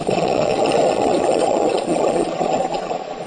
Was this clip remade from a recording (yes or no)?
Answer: yes